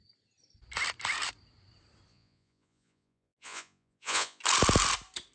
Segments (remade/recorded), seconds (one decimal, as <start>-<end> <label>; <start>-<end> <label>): 0.0-2.1 recorded; 2.1-4.4 remade; 4.4-5.3 recorded